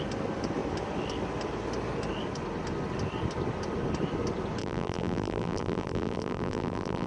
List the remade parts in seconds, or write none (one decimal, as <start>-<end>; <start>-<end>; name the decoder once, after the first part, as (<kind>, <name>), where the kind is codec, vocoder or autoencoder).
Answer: 4.6-7.1 (vocoder, BigVGAN v2)